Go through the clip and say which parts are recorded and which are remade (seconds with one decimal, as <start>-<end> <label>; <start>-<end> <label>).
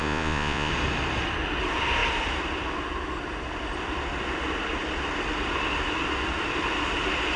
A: 0.0-0.7 remade; 0.7-7.4 recorded